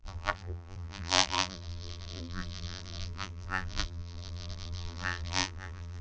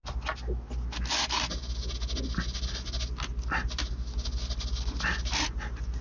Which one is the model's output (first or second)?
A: first